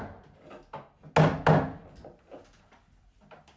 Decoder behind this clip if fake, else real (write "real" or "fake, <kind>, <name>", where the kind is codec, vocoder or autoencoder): real